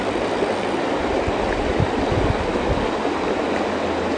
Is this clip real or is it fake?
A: real